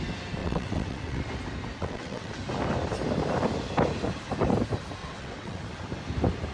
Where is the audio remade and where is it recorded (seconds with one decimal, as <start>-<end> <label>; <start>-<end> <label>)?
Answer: 0.0-0.4 recorded; 0.4-1.2 remade; 1.2-1.8 recorded; 1.8-2.3 remade; 2.3-5.0 recorded; 5.0-5.6 remade; 5.6-6.5 recorded